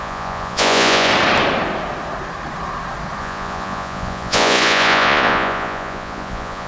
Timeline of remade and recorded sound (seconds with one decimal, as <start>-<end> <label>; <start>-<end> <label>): 0.0-1.1 remade; 1.1-3.2 recorded; 3.2-6.7 remade